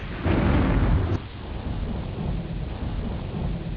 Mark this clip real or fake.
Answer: real